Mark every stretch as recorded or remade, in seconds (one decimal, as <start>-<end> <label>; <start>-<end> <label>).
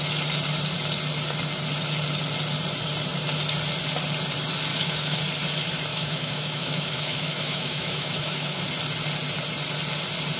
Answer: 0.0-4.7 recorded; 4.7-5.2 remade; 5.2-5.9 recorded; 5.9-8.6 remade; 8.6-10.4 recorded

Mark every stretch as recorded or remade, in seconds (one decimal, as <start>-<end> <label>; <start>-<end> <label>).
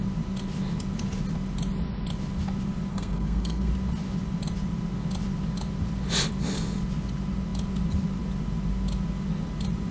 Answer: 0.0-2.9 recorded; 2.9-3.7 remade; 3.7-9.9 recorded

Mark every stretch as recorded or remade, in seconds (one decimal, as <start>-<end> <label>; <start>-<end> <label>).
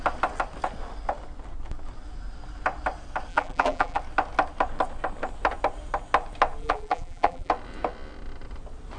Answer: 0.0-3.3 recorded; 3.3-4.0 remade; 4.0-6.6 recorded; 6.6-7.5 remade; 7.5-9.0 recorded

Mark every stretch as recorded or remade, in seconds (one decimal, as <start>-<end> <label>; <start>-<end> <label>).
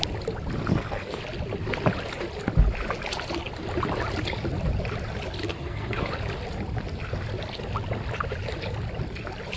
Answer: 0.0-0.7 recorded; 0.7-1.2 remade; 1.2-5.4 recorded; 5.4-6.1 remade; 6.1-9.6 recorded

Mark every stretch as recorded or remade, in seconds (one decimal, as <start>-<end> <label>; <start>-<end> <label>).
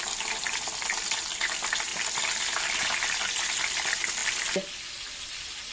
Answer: 0.0-5.7 recorded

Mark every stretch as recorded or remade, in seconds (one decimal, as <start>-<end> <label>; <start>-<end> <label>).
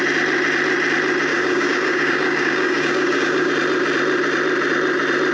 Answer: 0.0-1.3 recorded; 1.3-3.5 remade; 3.5-5.3 recorded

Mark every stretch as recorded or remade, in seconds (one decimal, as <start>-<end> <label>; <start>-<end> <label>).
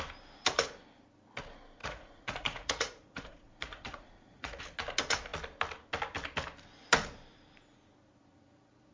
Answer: 0.0-1.8 recorded; 1.8-4.6 remade; 4.6-8.9 recorded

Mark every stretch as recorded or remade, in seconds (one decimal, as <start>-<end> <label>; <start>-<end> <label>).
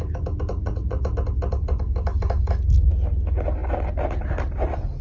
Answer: 0.0-0.5 recorded; 0.5-1.1 remade; 1.1-5.0 recorded